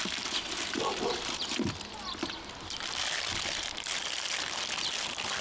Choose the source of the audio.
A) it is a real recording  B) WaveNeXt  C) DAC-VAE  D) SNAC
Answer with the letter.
A